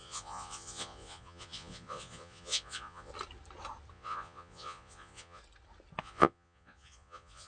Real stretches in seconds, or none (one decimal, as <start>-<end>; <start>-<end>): 3.1-3.9; 5.4-6.0